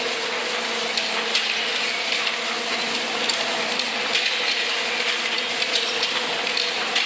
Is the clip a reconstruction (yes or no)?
no